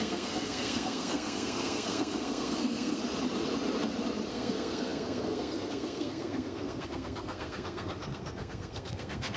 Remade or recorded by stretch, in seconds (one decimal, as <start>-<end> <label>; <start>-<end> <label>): 0.0-3.0 remade; 3.0-4.3 recorded; 4.3-9.4 remade

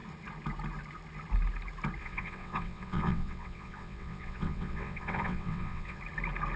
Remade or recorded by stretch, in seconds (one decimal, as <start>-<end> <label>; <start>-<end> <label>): 0.0-2.0 recorded; 2.0-6.0 remade; 6.0-6.6 recorded